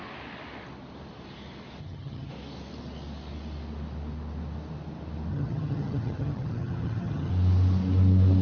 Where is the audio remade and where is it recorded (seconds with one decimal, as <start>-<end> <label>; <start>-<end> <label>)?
0.0-1.8 recorded; 1.8-2.3 remade; 2.3-5.3 recorded; 5.3-7.3 remade; 7.3-8.4 recorded